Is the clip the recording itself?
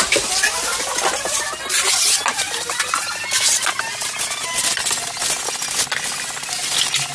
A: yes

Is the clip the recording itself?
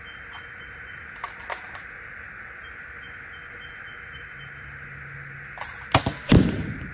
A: yes